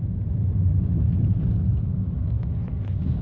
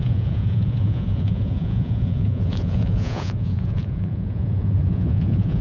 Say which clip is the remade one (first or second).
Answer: second